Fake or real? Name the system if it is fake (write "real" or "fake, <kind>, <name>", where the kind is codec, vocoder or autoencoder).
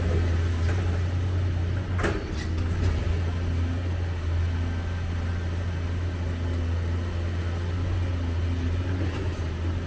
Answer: real